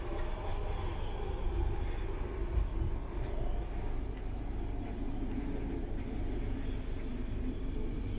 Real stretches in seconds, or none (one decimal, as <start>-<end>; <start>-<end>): 0.5-1.8; 2.7-5.6